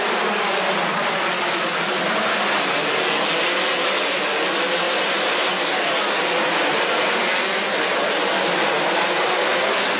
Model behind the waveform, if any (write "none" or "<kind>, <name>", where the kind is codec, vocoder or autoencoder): none